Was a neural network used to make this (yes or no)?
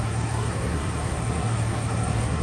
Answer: yes